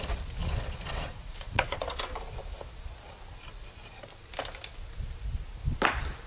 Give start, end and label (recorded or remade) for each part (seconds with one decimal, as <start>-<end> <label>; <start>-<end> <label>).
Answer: 0.0-0.4 recorded; 0.4-2.0 remade; 2.0-6.3 recorded

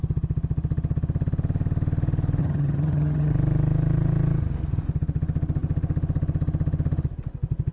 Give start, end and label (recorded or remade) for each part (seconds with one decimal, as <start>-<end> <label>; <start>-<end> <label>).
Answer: 0.0-2.4 recorded; 2.4-3.3 remade; 3.3-7.7 recorded